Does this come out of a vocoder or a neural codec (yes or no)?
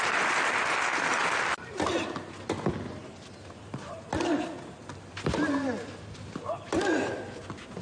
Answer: no